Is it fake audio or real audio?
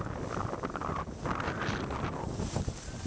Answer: real